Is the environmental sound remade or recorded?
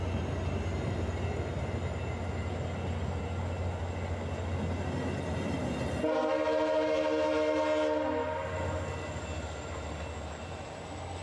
recorded